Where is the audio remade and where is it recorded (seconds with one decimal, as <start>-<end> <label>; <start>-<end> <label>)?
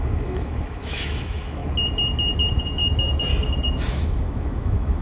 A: 0.0-1.6 remade; 1.6-2.6 recorded; 2.6-3.3 remade; 3.3-3.9 recorded; 3.9-5.0 remade